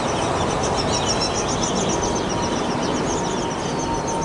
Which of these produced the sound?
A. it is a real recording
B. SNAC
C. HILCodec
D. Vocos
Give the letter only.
A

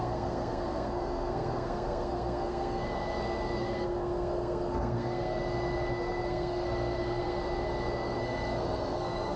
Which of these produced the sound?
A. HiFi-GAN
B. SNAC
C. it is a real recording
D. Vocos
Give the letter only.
B